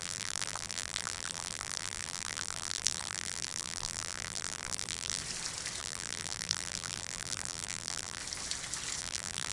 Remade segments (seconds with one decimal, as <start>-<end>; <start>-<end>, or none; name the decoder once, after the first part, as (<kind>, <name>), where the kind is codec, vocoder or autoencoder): 0.0-5.2 (vocoder, BigVGAN v2); 5.8-8.2; 9.0-9.5